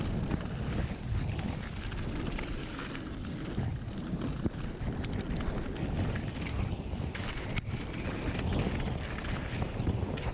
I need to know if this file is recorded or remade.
recorded